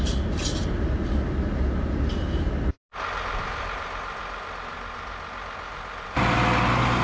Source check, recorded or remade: recorded